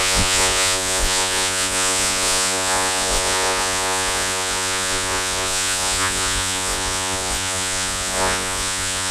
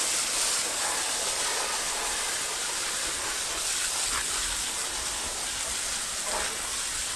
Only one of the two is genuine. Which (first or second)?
second